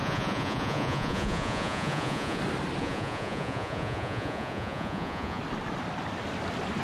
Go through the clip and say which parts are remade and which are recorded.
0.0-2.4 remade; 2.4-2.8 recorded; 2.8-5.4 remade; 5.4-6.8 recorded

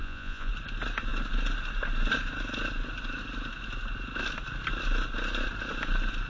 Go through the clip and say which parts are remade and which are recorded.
0.0-0.5 remade; 0.5-6.3 recorded

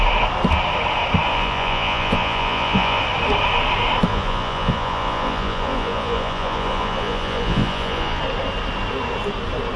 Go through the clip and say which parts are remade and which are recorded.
0.0-1.3 recorded; 1.3-3.0 remade; 3.0-4.1 recorded; 4.1-8.2 remade; 8.2-9.8 recorded